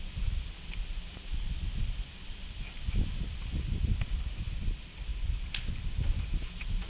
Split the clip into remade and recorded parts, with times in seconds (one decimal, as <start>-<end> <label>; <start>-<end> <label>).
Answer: 0.0-6.9 recorded